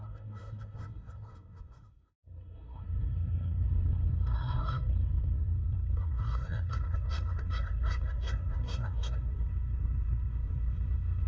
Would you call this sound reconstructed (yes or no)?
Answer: yes